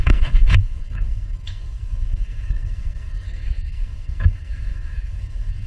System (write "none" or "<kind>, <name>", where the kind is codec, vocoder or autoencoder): codec, SNAC